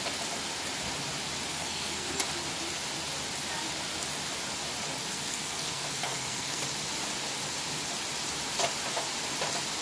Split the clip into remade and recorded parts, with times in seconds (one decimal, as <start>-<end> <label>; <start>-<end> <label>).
0.0-1.5 recorded; 1.5-2.2 remade; 2.2-5.0 recorded; 5.0-6.6 remade; 6.6-9.8 recorded